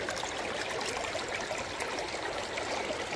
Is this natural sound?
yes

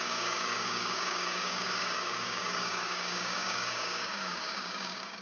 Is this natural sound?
no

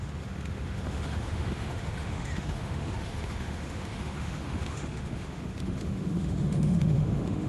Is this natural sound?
no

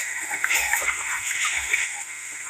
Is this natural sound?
no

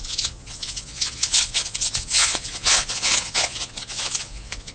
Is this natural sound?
no